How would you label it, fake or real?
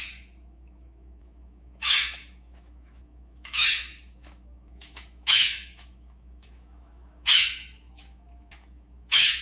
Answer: fake